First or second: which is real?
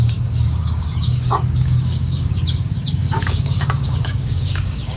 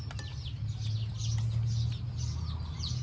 second